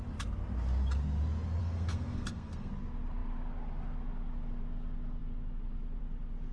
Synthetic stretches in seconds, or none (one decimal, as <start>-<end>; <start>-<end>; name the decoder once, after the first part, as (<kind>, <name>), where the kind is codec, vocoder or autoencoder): 1.6-2.7 (codec, SNAC)